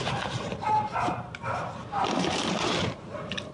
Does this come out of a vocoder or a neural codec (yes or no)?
yes